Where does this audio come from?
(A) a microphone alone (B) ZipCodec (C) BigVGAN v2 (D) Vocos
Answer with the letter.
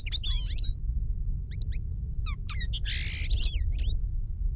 A